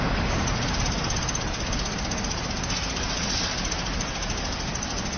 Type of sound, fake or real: real